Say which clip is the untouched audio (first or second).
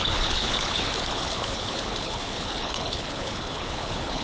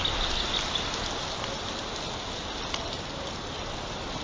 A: second